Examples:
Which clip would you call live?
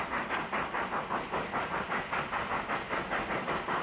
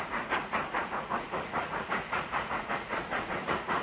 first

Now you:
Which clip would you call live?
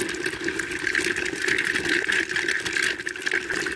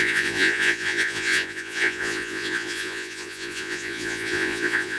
first